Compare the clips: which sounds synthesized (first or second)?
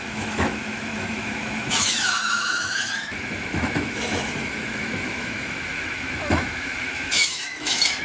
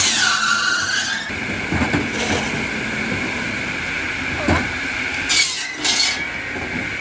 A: first